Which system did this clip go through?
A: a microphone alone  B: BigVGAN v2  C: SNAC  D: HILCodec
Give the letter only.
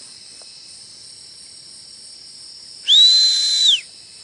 A